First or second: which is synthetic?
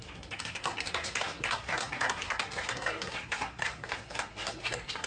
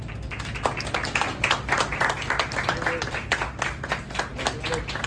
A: first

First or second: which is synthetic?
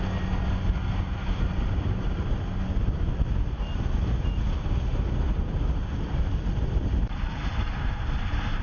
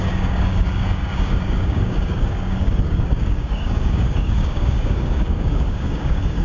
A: second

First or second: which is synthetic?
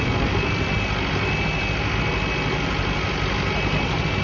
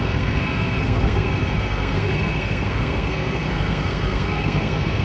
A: second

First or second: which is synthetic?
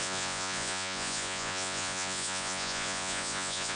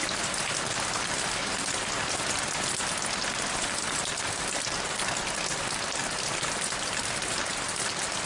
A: first